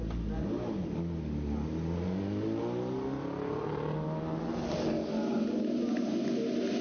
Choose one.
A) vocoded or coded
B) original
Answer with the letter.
B